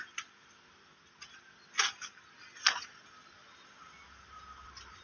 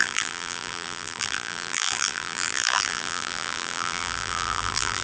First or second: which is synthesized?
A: second